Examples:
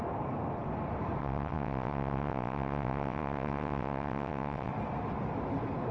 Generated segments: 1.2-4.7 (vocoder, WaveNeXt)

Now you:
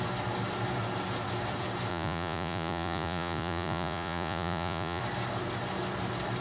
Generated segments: 1.9-5.0 (vocoder, Vocos)